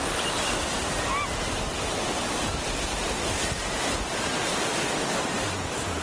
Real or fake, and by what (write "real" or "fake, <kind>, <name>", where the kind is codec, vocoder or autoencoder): real